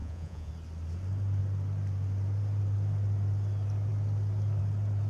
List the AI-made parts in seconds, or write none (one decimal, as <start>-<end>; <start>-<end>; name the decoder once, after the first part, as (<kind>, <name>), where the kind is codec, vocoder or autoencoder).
0.0-0.5 (vocoder, Vocos)